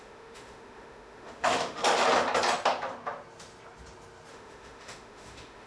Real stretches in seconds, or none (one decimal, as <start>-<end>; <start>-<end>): 1.8-4.3